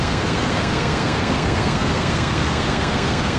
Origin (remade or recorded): remade